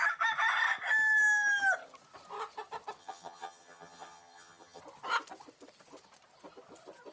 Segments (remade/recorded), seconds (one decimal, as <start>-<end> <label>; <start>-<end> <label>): 0.0-3.0 recorded; 3.0-4.8 remade; 4.8-7.1 recorded